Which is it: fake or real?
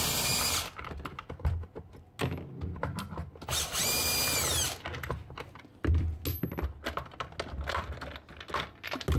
real